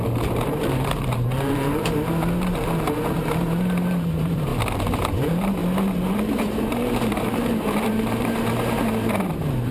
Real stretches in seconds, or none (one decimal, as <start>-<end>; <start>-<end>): 4.5-5.1; 5.6-6.1

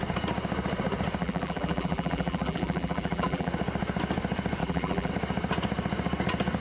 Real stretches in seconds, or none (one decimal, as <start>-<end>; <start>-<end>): 0.0-1.2; 3.5-4.6; 5.1-6.6

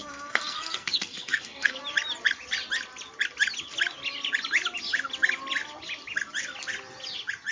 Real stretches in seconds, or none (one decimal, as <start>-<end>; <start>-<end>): 1.8-7.5